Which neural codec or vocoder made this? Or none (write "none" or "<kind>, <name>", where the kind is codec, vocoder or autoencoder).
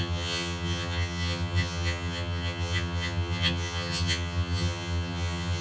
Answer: vocoder, HiFi-GAN